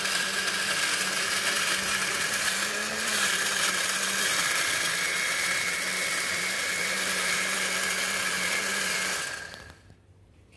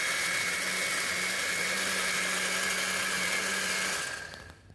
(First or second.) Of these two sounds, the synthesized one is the first